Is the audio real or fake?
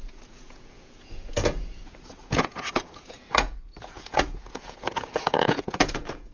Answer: fake